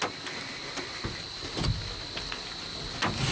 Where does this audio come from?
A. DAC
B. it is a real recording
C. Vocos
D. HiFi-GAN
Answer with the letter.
B